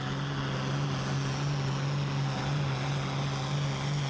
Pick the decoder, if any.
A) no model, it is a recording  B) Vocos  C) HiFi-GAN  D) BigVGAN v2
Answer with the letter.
A